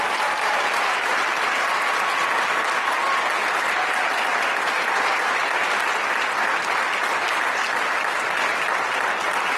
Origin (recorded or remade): recorded